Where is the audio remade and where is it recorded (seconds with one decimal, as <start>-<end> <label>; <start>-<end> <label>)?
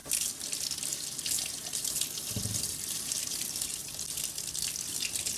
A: 0.0-2.6 recorded; 2.6-3.8 remade; 3.8-5.4 recorded